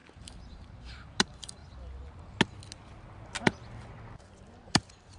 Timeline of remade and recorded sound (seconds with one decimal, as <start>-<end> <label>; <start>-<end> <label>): 0.0-1.6 remade; 1.6-4.7 recorded; 4.7-5.2 remade